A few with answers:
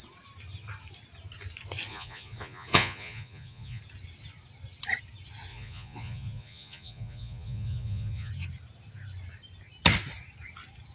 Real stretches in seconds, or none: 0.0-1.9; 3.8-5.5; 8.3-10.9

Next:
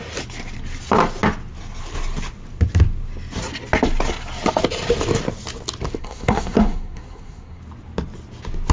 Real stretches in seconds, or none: 0.0-6.0; 7.6-8.7

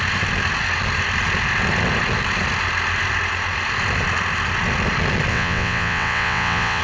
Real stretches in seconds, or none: 0.0-5.3

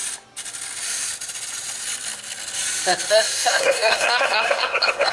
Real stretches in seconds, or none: 0.0-3.1

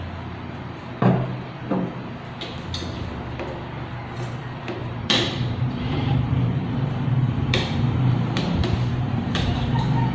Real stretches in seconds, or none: 0.0-4.8; 9.3-10.1

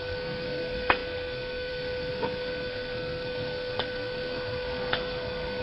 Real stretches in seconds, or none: none